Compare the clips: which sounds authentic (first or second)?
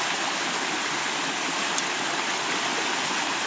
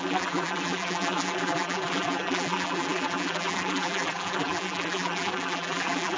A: first